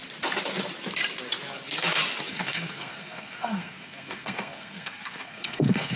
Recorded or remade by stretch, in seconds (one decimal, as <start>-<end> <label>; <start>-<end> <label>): 0.0-2.3 recorded; 2.3-6.0 remade